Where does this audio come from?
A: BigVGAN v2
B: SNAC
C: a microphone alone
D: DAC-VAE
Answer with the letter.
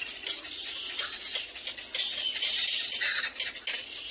C